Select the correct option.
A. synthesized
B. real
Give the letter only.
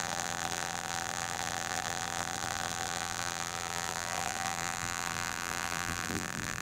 A